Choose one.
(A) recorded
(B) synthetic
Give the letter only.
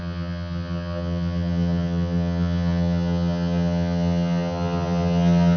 B